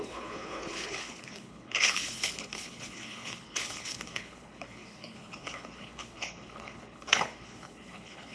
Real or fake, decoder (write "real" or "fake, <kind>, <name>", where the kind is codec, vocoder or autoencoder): fake, codec, HILCodec